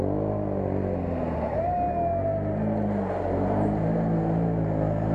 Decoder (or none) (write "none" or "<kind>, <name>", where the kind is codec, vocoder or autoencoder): none